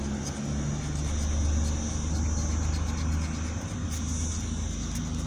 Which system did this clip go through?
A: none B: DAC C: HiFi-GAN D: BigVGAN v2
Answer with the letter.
A